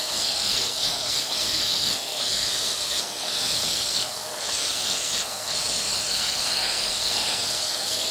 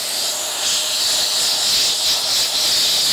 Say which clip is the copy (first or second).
first